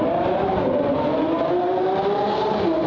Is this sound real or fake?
fake